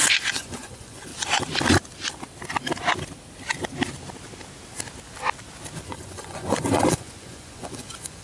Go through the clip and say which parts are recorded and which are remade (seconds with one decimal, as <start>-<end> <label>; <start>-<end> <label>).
0.0-1.1 remade; 1.1-5.8 recorded; 5.8-8.2 remade